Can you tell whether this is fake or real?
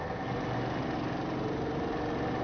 real